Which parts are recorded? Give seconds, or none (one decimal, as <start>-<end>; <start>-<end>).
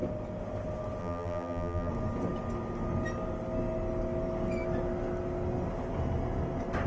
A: 0.0-1.0; 1.9-6.9